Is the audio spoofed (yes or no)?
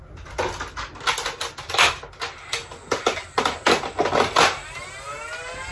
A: no